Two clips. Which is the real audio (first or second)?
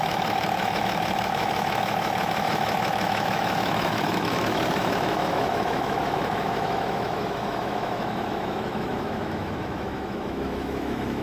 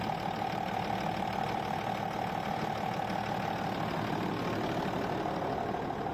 second